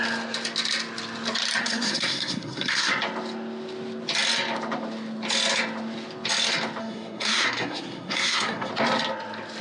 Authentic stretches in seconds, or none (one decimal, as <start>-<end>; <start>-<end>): 0.0-1.6; 2.9-6.8; 8.7-9.6